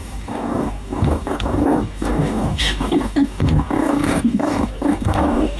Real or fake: fake